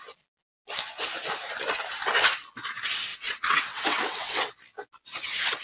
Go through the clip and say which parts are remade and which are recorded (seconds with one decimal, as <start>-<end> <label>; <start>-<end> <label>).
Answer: 0.0-3.1 recorded; 3.1-4.5 remade; 4.5-5.6 recorded